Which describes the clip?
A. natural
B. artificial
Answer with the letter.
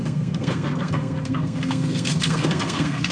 B